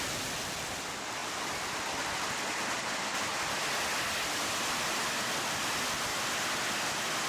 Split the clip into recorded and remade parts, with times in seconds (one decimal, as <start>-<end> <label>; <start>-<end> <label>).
0.0-7.3 recorded